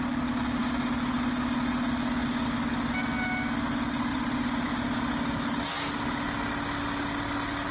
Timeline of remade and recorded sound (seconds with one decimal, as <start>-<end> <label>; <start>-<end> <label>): 0.0-4.1 recorded; 4.1-4.7 remade; 4.7-7.7 recorded